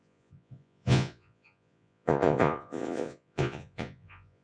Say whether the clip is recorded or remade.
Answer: remade